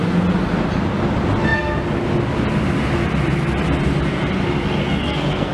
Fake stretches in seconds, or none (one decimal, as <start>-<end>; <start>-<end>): 4.8-5.5